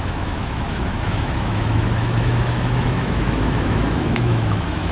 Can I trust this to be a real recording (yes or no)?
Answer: no